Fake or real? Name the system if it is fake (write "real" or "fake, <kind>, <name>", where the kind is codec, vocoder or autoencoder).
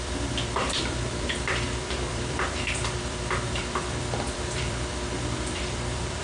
fake, vocoder, BigVGAN v2